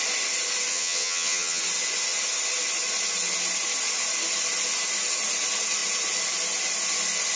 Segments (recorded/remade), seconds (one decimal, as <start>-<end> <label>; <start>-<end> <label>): 0.0-0.7 recorded; 0.7-1.6 remade; 1.6-7.4 recorded